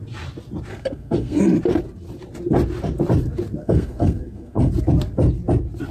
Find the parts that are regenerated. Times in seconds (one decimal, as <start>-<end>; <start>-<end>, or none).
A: 0.7-1.4; 3.6-4.7